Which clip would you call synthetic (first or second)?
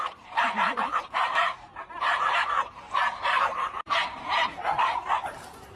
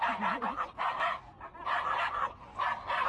first